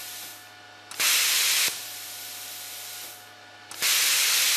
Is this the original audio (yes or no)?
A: yes